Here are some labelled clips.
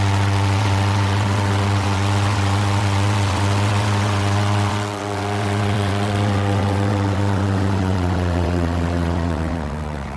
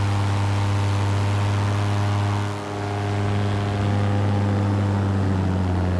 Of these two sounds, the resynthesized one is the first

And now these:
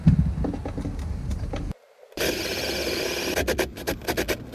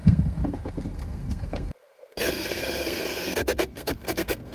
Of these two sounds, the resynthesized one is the second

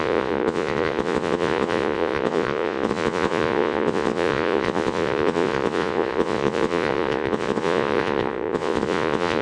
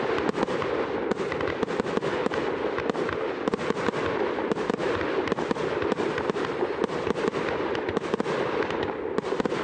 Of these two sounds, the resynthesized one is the first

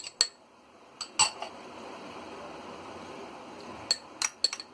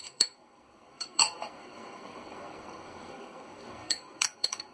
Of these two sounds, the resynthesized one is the second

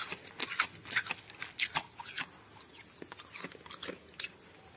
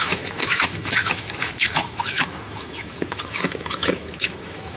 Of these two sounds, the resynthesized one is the second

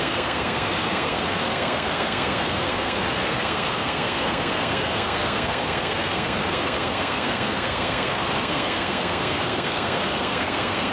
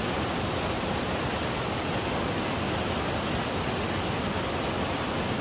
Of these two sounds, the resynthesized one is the first